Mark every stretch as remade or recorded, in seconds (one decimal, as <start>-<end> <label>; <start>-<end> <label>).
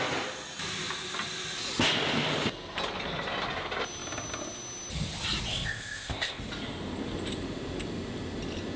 0.0-5.5 recorded; 5.5-6.4 remade; 6.4-8.8 recorded